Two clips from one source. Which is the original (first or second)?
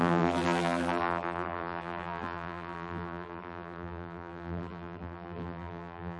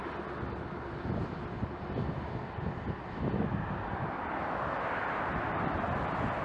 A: second